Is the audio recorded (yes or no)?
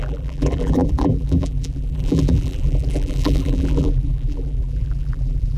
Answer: no